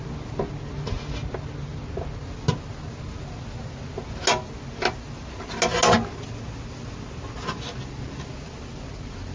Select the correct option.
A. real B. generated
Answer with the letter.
A